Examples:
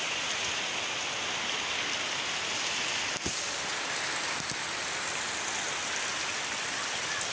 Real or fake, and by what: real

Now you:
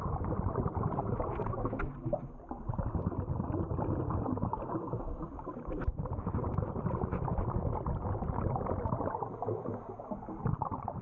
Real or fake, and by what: real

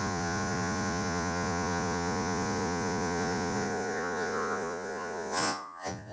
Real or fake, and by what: fake, vocoder, Vocos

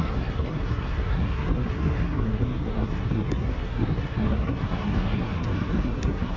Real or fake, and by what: fake, codec, SNAC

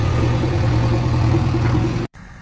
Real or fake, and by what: fake, vocoder, Vocos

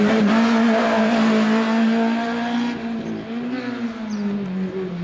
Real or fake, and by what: real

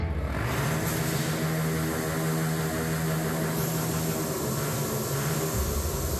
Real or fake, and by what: real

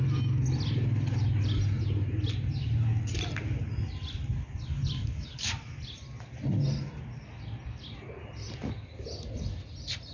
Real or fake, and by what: real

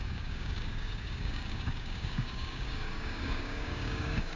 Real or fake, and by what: fake, codec, DAC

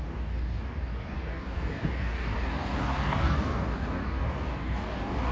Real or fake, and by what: fake, codec, DAC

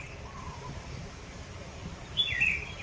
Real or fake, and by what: real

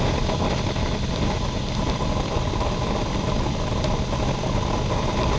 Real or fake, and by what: real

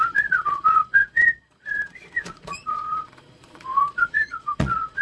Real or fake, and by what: fake, vocoder, Vocos